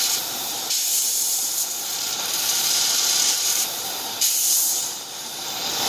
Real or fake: fake